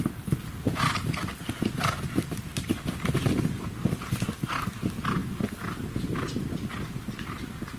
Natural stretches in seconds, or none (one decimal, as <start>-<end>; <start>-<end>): 0.0-7.8